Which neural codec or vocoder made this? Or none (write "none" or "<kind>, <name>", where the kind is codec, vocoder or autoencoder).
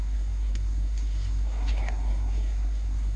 codec, SNAC